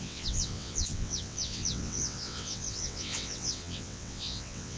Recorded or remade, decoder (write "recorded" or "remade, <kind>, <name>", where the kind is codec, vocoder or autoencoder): remade, vocoder, WaveNeXt